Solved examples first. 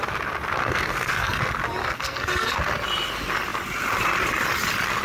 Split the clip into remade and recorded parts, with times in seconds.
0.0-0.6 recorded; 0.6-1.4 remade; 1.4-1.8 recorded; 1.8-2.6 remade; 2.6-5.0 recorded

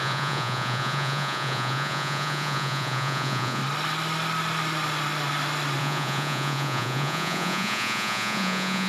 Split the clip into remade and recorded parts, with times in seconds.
0.0-3.6 remade; 3.6-5.8 recorded; 5.8-8.9 remade

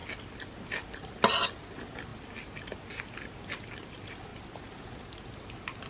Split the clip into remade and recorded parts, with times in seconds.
0.0-5.9 recorded

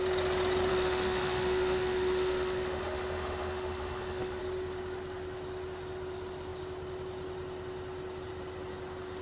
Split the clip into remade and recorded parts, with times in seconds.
0.0-0.7 recorded; 0.7-4.4 remade; 4.4-9.2 recorded

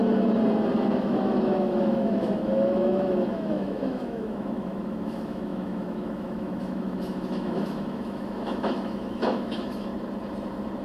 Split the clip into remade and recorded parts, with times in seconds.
0.0-1.0 recorded; 1.0-9.9 remade; 9.9-10.8 recorded

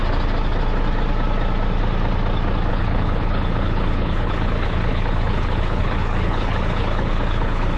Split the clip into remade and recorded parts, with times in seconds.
0.0-2.7 recorded; 2.7-7.8 remade